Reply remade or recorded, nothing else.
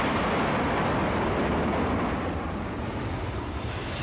recorded